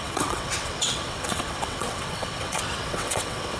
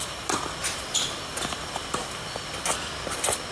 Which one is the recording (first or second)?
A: second